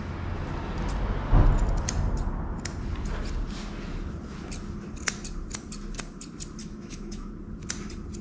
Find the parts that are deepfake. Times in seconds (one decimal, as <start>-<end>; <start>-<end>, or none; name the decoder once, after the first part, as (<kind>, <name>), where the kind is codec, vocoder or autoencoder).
6.6-7.3 (autoencoder, DAC-VAE)